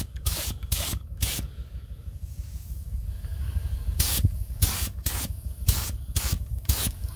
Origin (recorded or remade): remade